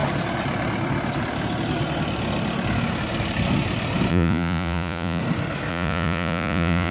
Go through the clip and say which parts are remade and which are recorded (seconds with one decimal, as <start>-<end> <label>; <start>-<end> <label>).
0.0-4.1 recorded; 4.1-5.2 remade; 5.2-5.7 recorded; 5.7-6.9 remade